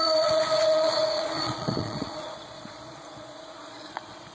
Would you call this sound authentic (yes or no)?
no